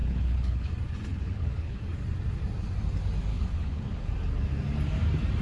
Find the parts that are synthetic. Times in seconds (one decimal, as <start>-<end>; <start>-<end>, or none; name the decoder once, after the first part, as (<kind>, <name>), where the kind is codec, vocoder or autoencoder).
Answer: 0.0-0.7 (codec, HILCodec); 1.1-1.8; 3.3-4.1